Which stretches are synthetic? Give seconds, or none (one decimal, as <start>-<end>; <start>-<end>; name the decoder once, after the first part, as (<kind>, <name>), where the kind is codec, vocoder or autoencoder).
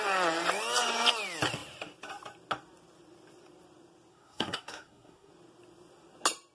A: 4.1-5.3 (codec, SNAC)